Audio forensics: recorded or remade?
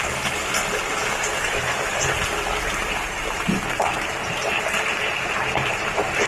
remade